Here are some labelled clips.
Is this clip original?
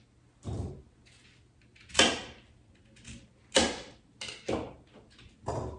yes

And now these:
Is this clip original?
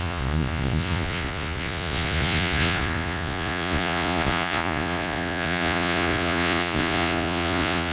no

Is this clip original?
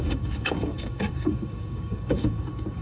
no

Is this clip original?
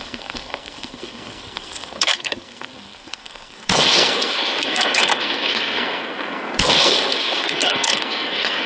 no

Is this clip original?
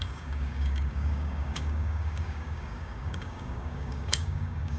no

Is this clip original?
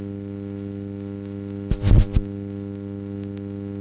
yes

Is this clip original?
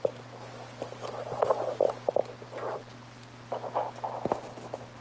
yes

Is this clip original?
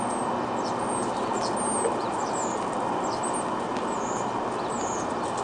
yes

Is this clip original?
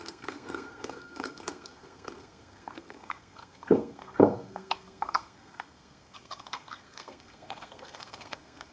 no